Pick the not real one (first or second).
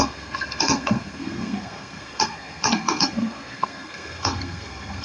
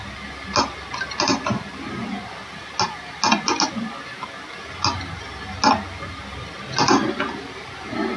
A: first